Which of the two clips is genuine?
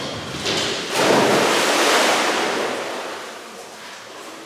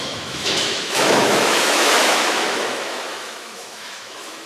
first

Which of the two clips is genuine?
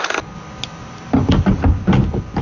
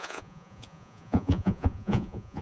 first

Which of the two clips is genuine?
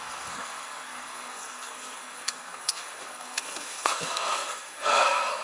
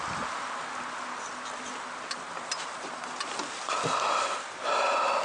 second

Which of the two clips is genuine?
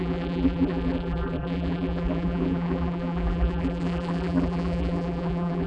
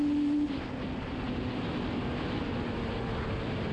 second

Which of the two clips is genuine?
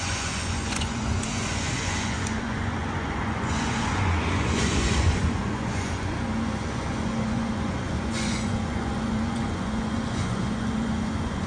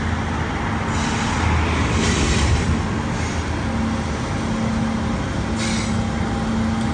second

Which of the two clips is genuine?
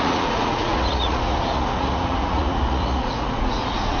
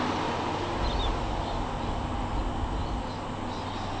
second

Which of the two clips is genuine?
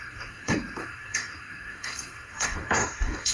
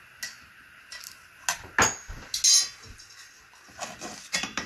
second